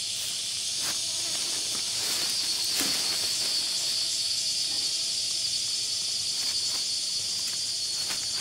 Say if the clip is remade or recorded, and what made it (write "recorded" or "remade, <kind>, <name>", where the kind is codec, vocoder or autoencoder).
recorded